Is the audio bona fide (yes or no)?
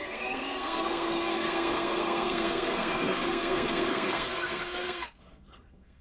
no